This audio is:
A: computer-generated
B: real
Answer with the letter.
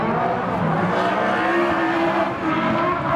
B